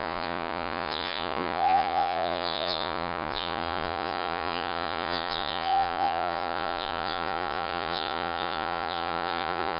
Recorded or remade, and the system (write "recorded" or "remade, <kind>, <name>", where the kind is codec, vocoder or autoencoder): remade, vocoder, Vocos